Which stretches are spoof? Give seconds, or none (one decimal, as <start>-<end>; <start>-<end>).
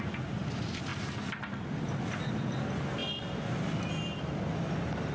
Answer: none